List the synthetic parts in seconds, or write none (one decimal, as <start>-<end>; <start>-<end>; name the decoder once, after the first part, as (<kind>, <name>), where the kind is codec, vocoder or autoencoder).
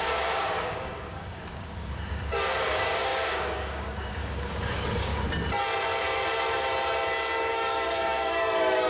0.0-5.1 (codec, DAC); 7.5-8.9